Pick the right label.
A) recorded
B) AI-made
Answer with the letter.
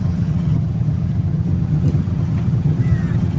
B